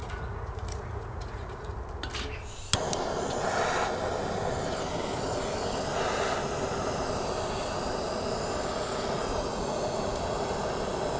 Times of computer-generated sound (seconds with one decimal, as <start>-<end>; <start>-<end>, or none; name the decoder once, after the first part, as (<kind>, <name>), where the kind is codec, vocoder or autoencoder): 0.0-1.7 (vocoder, Vocos); 8.8-10.5